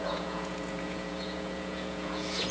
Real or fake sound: fake